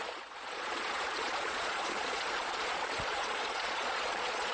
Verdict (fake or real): fake